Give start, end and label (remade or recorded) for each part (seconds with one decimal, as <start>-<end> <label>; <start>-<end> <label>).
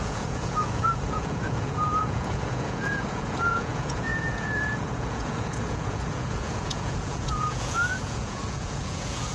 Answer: 0.0-9.3 remade